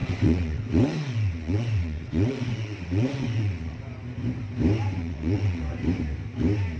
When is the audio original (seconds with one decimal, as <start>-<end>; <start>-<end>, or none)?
3.8-5.0; 5.6-6.8